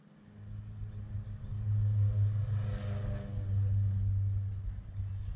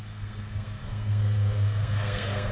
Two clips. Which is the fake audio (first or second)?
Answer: second